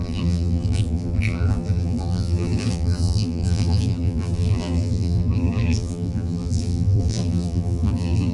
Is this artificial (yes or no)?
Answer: yes